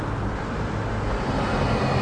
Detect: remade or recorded recorded